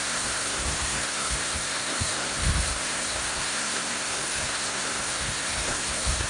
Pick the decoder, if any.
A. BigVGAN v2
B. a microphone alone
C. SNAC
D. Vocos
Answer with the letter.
C